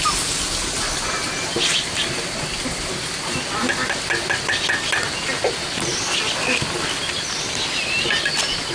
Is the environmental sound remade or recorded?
recorded